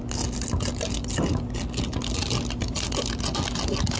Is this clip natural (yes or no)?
yes